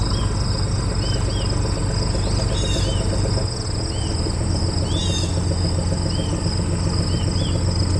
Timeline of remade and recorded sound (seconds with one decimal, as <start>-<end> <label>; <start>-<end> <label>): 0.0-8.0 recorded